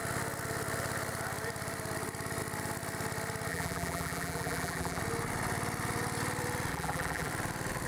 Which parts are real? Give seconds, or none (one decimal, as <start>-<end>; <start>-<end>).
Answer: 0.0-3.5; 5.0-6.7; 7.3-7.9

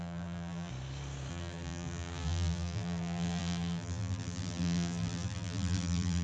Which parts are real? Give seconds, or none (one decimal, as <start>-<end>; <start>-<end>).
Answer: 0.7-1.3

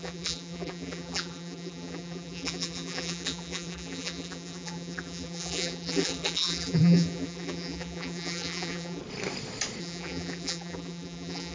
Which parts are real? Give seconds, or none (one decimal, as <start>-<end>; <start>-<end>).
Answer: 9.0-9.8

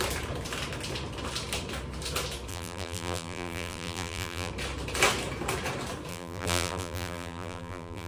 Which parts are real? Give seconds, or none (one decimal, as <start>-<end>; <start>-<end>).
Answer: 0.0-2.5; 4.5-6.1

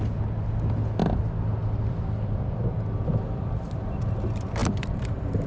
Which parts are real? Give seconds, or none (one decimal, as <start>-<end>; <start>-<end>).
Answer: 0.0-1.0; 2.6-3.1; 3.7-4.6

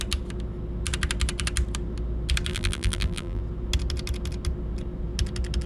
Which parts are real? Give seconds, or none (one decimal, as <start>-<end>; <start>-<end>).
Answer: 0.0-2.5; 3.4-5.7

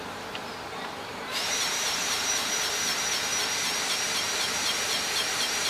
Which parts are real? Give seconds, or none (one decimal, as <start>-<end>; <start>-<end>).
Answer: 3.3-5.3